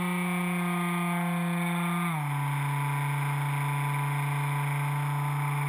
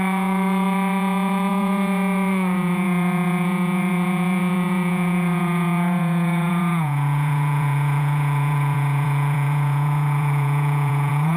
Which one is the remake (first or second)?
second